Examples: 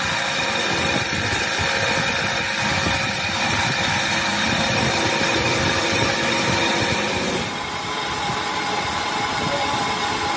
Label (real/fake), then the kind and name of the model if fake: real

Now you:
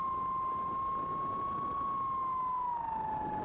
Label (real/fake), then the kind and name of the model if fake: real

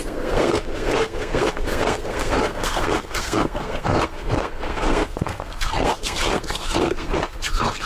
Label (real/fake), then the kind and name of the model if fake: fake, codec, SNAC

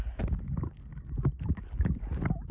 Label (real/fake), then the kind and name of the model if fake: real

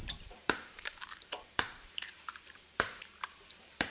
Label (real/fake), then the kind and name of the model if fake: fake, vocoder, BigVGAN v2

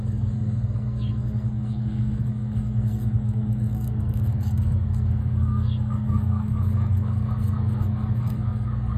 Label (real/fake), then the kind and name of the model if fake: fake, codec, SNAC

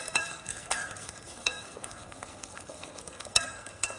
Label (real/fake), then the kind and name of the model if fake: fake, codec, SNAC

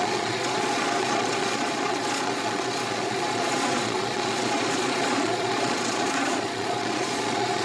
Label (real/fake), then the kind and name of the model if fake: fake, vocoder, Vocos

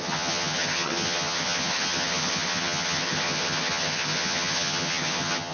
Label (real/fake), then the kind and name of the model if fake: fake, vocoder, HiFi-GAN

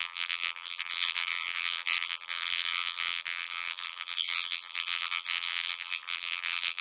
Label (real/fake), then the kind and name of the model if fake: fake, vocoder, BigVGAN v2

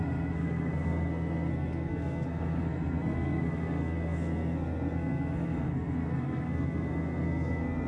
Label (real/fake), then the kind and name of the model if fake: fake, codec, SNAC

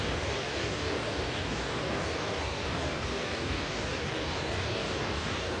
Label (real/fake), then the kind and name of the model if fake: fake, codec, DAC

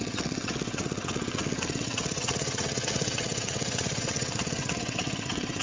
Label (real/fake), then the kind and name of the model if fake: fake, vocoder, WaveNeXt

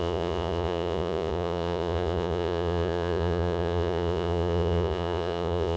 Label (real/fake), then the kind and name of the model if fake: fake, vocoder, Vocos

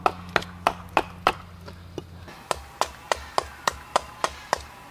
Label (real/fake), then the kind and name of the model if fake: real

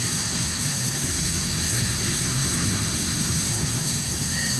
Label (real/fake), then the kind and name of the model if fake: fake, codec, SNAC